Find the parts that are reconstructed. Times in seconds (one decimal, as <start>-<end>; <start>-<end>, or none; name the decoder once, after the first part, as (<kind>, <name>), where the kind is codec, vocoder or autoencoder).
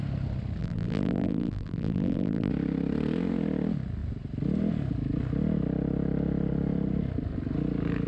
0.6-2.5 (vocoder, BigVGAN v2)